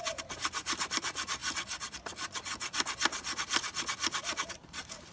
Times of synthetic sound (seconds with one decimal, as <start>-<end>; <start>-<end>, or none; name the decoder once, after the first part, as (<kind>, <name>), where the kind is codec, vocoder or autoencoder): 0.0-1.4 (vocoder, BigVGAN v2); 4.5-5.1